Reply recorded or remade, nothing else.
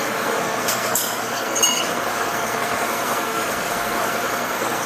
remade